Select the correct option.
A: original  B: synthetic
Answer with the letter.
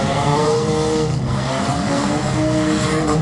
B